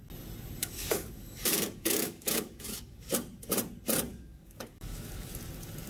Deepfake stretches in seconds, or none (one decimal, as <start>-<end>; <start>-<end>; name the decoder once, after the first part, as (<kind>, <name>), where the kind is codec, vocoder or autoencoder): 0.6-3.1 (codec, DAC); 4.1-5.3